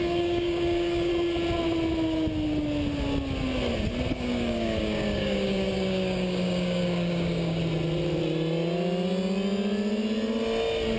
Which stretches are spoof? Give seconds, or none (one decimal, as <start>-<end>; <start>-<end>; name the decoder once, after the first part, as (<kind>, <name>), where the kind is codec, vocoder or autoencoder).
0.0-1.1 (codec, DAC); 4.1-7.6